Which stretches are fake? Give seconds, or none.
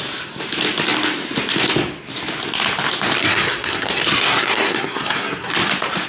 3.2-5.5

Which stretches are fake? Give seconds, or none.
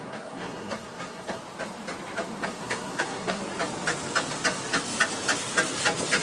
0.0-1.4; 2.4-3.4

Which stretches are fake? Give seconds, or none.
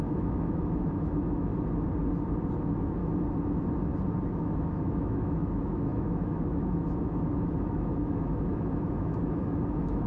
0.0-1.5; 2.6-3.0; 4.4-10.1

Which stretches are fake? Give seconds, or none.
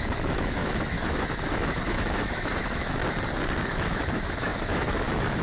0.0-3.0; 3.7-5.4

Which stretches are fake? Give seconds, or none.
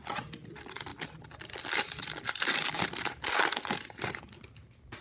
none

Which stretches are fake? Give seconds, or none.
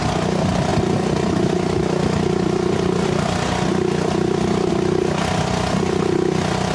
none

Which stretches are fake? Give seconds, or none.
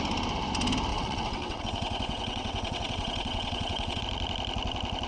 0.9-4.0